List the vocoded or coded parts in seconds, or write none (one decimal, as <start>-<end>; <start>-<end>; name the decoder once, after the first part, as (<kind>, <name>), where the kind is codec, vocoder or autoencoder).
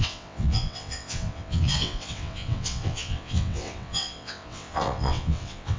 0.0-5.8 (vocoder, WaveNeXt)